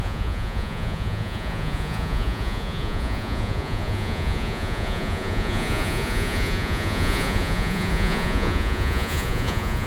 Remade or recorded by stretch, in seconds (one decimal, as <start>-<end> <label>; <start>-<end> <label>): 0.0-9.9 remade